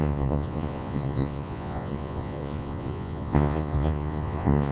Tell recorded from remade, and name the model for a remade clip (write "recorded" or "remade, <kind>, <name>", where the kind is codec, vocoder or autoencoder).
remade, vocoder, Vocos